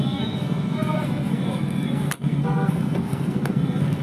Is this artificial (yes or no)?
yes